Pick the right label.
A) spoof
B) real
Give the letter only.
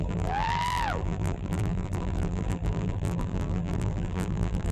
A